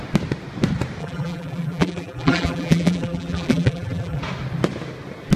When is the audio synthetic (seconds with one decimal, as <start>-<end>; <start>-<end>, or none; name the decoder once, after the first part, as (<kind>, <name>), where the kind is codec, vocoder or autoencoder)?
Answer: 1.0-4.2 (vocoder, BigVGAN v2)